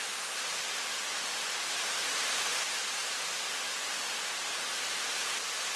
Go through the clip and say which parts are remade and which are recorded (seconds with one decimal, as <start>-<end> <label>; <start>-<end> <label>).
0.0-5.8 recorded